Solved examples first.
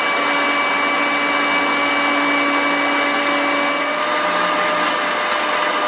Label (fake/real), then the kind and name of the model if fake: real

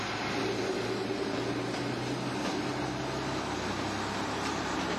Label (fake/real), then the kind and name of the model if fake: real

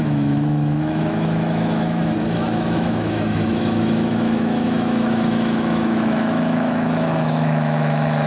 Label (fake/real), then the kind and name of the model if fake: fake, autoencoder, DAC-VAE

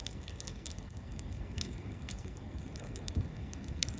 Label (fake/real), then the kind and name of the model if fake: fake, codec, SNAC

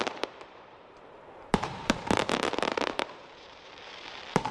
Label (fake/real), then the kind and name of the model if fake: fake, vocoder, BigVGAN v2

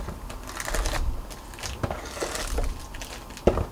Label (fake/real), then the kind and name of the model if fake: real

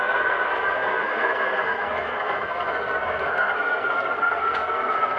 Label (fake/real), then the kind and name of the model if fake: fake, codec, SNAC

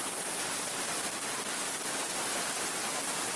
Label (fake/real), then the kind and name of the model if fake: real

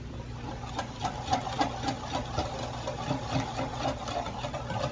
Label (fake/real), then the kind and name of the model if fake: real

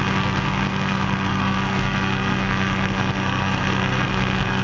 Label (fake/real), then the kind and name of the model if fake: fake, codec, SNAC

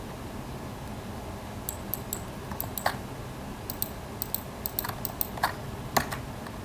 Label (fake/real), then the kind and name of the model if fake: real